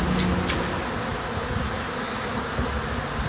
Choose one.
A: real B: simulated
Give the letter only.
A